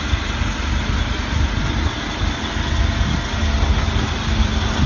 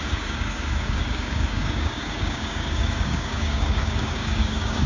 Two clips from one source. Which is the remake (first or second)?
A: second